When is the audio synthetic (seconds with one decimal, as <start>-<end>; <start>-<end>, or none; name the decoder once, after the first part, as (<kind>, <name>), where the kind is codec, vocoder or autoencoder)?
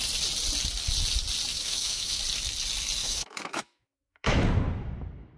1.5-2.2 (autoencoder, DAC-VAE); 3.0-4.4